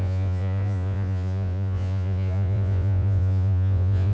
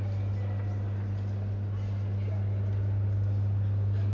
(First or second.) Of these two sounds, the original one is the second